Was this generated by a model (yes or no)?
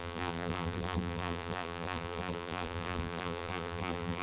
yes